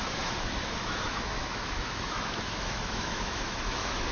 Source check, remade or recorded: remade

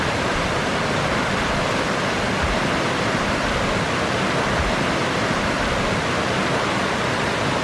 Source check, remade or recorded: recorded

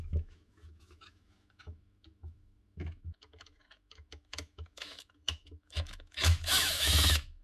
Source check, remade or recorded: remade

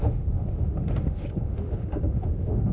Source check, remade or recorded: remade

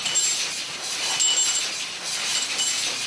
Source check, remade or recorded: recorded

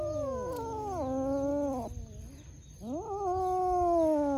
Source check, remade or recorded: recorded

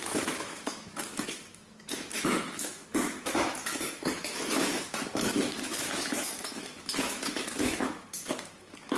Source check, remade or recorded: remade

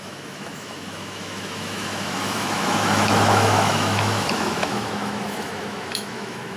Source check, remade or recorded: remade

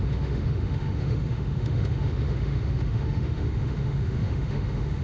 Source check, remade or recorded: remade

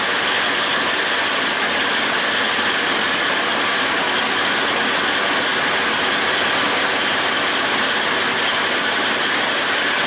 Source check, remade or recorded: recorded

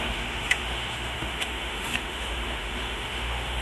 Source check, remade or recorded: remade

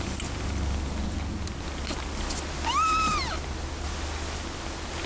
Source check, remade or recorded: recorded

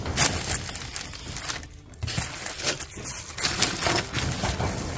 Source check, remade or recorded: recorded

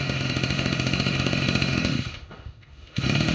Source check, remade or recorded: remade